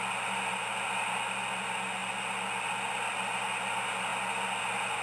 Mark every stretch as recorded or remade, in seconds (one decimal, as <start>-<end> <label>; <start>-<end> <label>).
0.0-5.0 recorded